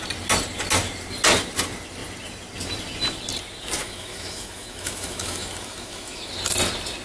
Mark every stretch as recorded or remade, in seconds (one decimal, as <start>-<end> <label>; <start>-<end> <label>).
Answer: 0.0-3.8 recorded; 3.8-6.3 remade; 6.3-7.0 recorded